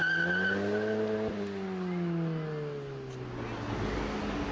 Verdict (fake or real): real